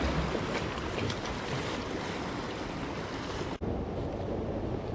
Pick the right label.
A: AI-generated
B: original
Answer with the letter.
B